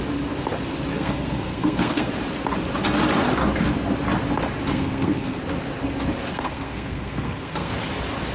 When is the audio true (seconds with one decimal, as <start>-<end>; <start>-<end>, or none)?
0.0-0.9; 2.1-4.7; 5.4-6.3; 7.7-8.3